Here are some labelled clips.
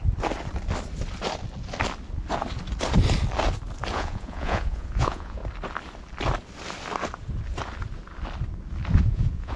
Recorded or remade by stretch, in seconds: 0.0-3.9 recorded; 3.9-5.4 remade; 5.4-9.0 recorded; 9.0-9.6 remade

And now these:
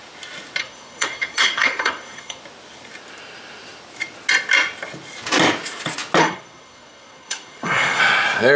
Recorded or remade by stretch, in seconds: 0.0-0.6 recorded; 0.6-2.4 remade; 2.4-6.2 recorded; 6.2-8.0 remade; 8.0-8.6 recorded

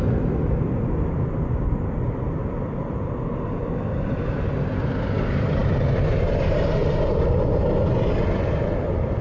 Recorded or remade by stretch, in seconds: 0.0-9.2 recorded

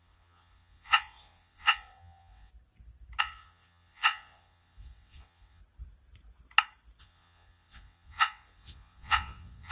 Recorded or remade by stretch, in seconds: 0.0-2.5 remade; 2.5-3.2 recorded; 3.2-5.6 remade; 5.6-7.0 recorded; 7.0-9.7 remade

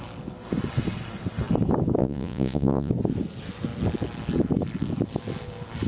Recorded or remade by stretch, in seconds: 0.0-2.0 recorded; 2.0-2.9 remade; 2.9-5.9 recorded

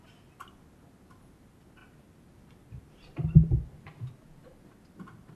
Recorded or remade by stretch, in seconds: 0.0-5.4 recorded